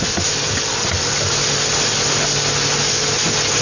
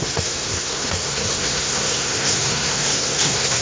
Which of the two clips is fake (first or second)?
second